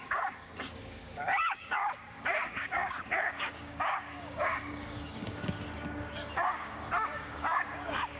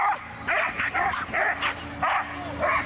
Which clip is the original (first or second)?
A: second